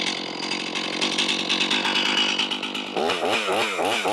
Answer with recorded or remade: recorded